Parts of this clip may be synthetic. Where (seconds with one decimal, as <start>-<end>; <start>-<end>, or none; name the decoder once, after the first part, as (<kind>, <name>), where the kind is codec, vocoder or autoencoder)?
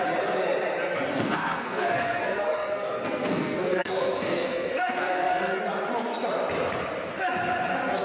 1.1-5.6 (codec, SNAC)